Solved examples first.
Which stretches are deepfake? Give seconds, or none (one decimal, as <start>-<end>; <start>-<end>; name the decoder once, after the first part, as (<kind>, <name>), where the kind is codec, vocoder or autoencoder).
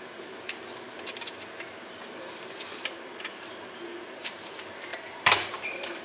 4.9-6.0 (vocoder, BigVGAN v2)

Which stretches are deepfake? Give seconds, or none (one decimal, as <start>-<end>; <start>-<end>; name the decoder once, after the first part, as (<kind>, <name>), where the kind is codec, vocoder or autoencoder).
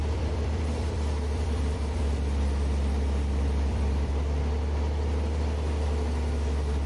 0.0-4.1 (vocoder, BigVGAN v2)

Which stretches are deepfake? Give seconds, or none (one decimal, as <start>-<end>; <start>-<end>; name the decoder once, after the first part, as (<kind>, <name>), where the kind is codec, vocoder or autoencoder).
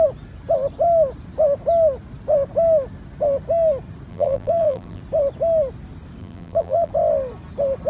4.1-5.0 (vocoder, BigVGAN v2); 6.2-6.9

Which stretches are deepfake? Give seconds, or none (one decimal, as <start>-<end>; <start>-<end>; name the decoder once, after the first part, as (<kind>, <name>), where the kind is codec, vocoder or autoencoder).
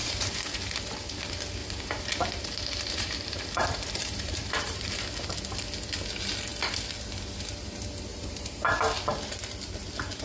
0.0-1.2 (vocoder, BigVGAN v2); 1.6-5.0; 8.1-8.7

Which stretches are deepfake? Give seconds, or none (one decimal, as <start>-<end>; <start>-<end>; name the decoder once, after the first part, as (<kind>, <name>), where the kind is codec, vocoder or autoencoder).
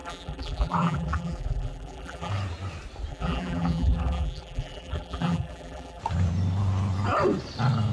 0.0-2.3 (vocoder, BigVGAN v2); 3.1-6.0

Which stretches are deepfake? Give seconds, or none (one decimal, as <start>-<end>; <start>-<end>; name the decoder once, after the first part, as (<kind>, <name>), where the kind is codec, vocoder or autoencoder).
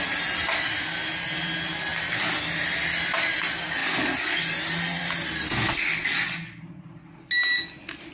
none